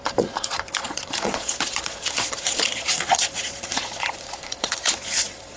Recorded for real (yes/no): no